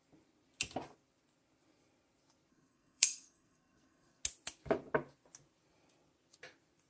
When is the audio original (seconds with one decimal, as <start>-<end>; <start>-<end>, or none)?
0.0-2.5; 4.2-6.9